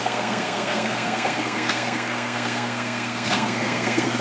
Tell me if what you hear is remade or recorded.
remade